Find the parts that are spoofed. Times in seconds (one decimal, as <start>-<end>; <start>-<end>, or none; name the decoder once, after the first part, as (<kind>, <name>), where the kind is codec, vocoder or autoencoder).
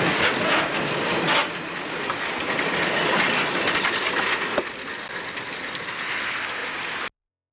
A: none